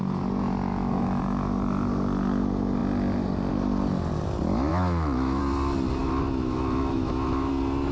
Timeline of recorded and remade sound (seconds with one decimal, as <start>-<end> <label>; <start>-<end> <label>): 0.0-0.7 recorded; 0.7-1.2 remade; 1.2-4.7 recorded; 4.7-5.4 remade; 5.4-6.0 recorded; 6.0-7.5 remade; 7.5-7.9 recorded